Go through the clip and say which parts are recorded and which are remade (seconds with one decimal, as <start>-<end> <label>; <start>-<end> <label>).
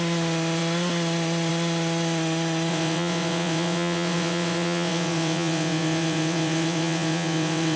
0.0-2.7 recorded; 2.7-7.8 remade